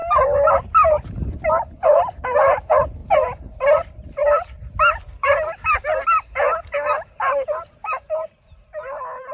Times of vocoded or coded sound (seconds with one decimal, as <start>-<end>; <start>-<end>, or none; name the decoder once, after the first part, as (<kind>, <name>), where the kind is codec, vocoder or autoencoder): 3.0-3.6 (vocoder, BigVGAN v2)